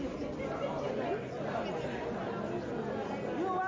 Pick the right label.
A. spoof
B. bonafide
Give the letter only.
B